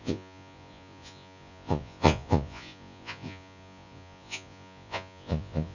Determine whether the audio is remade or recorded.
remade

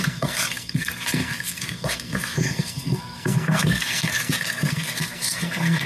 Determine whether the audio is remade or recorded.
remade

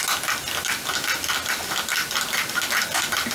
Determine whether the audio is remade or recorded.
recorded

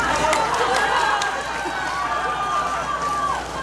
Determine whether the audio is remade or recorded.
recorded